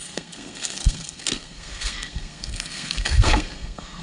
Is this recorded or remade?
remade